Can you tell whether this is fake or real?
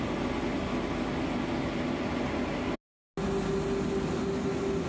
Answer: real